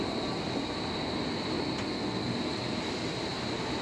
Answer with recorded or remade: recorded